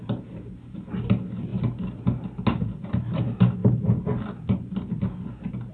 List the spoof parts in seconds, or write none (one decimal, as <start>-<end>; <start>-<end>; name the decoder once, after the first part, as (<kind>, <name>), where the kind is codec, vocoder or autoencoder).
none